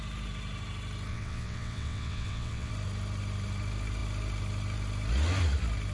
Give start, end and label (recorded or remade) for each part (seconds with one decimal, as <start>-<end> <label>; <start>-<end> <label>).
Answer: 0.0-1.1 recorded; 1.1-2.7 remade; 2.7-5.9 recorded